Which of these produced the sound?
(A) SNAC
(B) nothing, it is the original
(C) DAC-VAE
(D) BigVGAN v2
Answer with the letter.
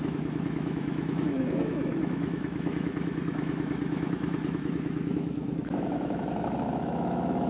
C